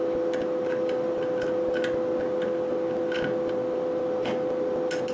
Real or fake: real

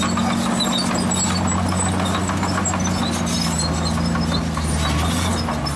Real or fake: real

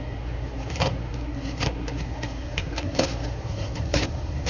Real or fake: fake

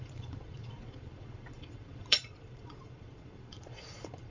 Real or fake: fake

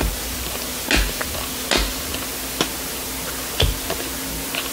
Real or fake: real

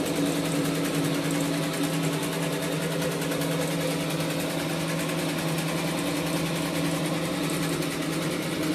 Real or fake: real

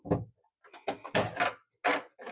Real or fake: real